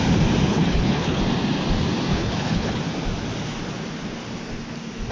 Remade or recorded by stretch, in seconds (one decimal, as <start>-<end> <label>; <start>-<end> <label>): 0.0-0.5 recorded; 0.5-1.2 remade; 1.2-2.1 recorded; 2.1-2.8 remade; 2.8-5.1 recorded